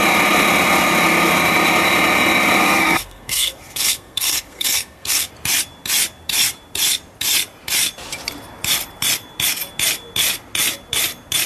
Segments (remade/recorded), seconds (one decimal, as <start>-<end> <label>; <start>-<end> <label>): 0.0-2.6 recorded; 2.6-5.3 remade; 5.3-11.5 recorded

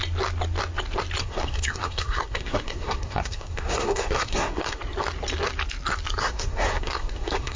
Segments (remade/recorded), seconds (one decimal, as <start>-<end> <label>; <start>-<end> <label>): 0.0-1.2 recorded; 1.2-4.8 remade; 4.8-6.2 recorded; 6.2-7.6 remade